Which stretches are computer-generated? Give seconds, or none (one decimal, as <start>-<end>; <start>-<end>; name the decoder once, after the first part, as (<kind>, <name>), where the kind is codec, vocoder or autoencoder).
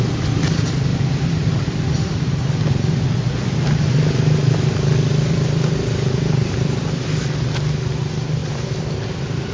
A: 4.4-8.0 (vocoder, BigVGAN v2); 8.4-9.1